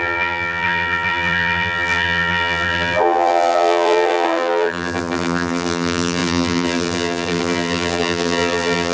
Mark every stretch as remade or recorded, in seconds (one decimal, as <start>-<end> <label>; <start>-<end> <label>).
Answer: 0.0-8.9 remade